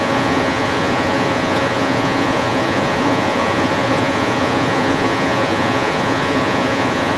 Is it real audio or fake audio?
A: fake